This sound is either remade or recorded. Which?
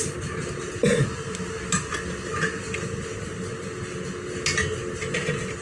recorded